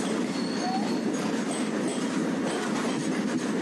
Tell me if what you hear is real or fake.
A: real